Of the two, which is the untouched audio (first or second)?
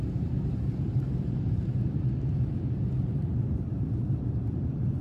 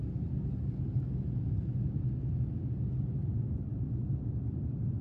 second